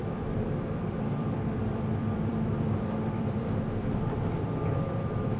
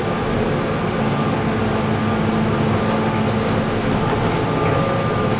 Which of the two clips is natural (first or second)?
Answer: second